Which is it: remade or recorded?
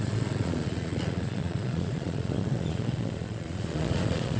remade